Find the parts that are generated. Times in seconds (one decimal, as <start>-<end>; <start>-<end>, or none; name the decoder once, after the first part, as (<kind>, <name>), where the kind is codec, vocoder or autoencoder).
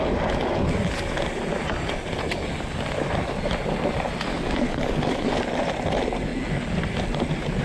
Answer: 4.3-5.5 (codec, DAC)